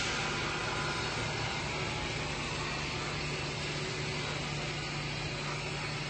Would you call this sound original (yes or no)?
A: yes